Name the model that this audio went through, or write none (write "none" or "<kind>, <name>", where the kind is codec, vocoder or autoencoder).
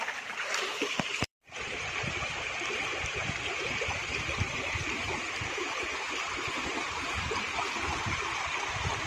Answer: vocoder, BigVGAN v2